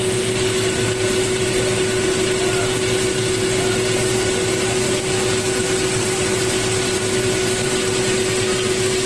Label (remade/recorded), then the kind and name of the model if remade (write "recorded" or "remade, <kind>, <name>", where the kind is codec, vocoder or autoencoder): recorded